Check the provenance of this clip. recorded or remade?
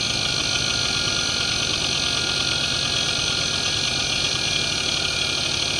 recorded